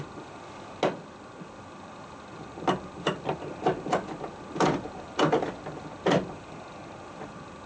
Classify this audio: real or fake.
real